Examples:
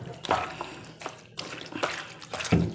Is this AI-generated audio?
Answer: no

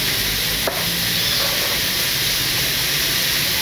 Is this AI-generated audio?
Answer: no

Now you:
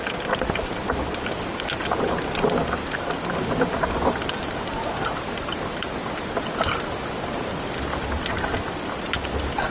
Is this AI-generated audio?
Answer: no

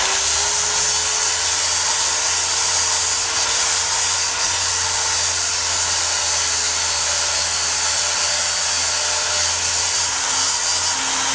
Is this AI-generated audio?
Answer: no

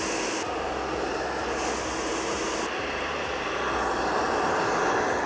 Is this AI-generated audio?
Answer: no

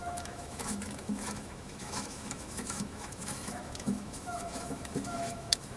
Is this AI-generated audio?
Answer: yes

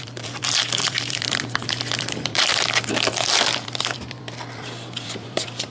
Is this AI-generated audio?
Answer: yes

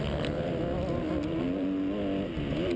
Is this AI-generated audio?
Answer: no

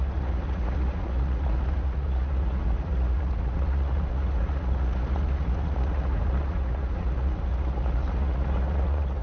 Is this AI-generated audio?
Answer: yes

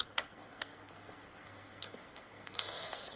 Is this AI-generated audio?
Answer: yes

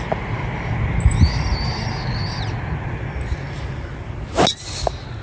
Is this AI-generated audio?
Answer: no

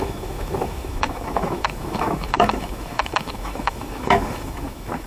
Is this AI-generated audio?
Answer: yes